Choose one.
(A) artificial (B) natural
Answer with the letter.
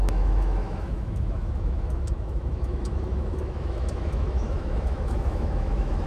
A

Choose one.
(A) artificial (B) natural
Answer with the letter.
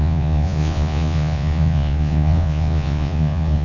A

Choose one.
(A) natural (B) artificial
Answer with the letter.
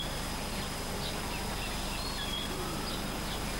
A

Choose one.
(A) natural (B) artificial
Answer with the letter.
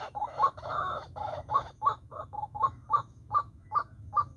B